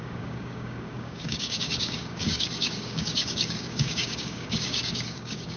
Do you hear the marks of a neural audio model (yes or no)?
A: yes